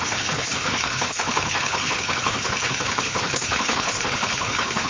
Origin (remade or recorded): remade